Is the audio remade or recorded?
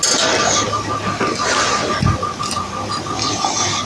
recorded